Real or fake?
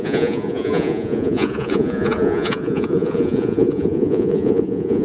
fake